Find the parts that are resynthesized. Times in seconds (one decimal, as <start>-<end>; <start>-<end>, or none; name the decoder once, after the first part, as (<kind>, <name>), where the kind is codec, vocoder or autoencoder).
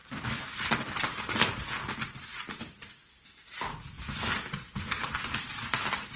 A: none